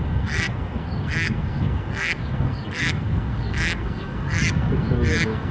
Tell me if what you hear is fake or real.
fake